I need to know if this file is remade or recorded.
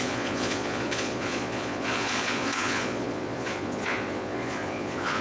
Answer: remade